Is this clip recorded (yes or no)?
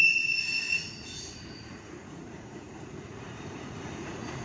no